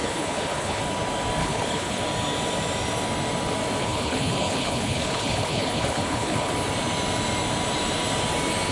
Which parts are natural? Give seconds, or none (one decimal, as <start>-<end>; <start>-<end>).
0.8-1.4; 2.0-3.8; 6.5-8.7